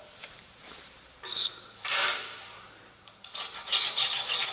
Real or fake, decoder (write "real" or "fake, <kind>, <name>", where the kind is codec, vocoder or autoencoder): fake, vocoder, BigVGAN v2